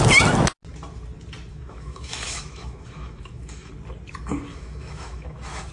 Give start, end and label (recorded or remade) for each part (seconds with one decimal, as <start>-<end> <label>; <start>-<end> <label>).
0.0-1.5 recorded; 1.5-3.7 remade; 3.7-4.5 recorded; 4.5-5.7 remade